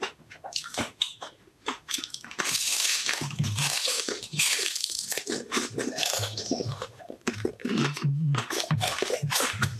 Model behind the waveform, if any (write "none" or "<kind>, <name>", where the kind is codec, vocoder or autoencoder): autoencoder, DAC-VAE